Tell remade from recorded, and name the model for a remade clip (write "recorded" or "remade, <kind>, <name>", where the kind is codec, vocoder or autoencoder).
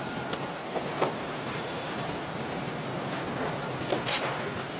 recorded